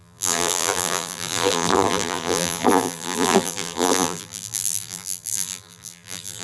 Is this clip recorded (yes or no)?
no